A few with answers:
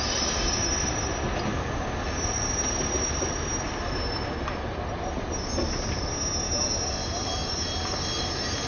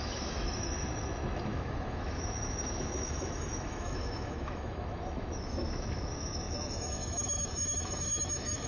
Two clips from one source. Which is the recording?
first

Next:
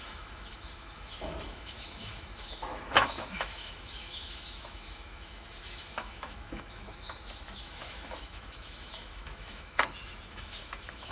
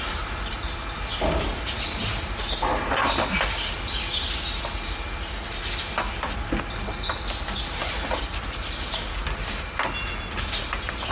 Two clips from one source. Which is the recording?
second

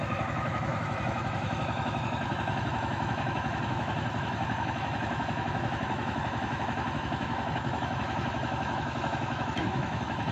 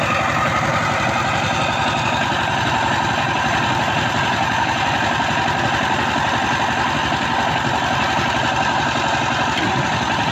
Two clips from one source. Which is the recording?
second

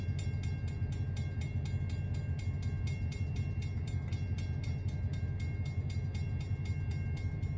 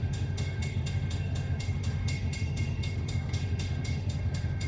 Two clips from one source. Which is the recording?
first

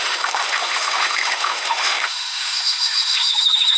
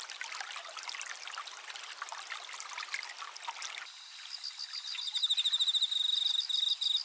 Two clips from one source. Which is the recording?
second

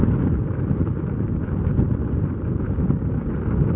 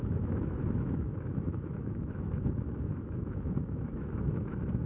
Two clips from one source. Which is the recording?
first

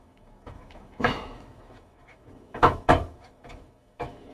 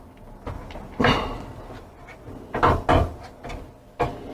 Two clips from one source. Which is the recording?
second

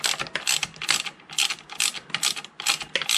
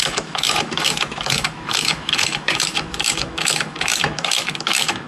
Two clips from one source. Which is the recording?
first